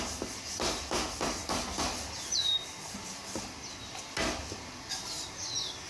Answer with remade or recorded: recorded